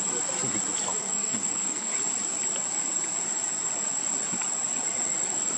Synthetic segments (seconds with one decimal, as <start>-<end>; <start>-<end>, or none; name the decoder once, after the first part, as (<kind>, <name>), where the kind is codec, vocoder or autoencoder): 1.0-1.9 (codec, SNAC)